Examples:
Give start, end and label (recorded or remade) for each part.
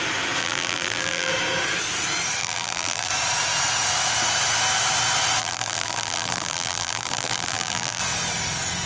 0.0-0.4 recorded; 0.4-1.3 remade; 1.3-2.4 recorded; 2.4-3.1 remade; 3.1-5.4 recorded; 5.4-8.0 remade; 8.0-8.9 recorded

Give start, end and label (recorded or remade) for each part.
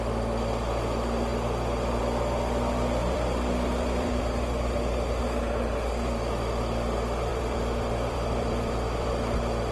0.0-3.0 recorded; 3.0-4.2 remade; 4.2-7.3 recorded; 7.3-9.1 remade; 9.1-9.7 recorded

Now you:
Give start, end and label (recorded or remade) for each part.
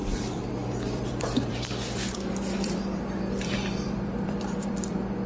0.0-5.3 remade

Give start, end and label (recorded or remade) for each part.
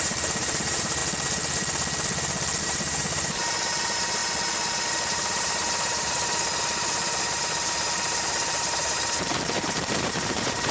0.0-1.0 remade; 1.0-2.6 recorded; 2.6-4.2 remade; 4.2-4.9 recorded; 4.9-10.7 remade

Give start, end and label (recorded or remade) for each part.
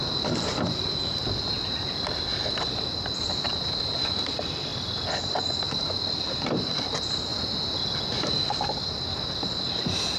0.0-4.7 remade; 4.7-5.4 recorded; 5.4-7.3 remade; 7.3-8.5 recorded; 8.5-10.2 remade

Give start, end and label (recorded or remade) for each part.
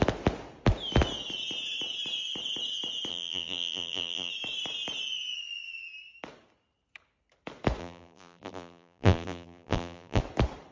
0.0-3.1 recorded; 3.1-4.3 remade; 4.3-7.8 recorded; 7.8-10.2 remade; 10.2-10.7 recorded